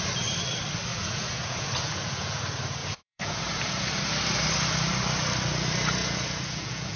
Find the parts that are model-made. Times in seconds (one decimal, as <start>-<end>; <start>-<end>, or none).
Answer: 0.9-2.4; 2.8-3.9; 6.0-7.0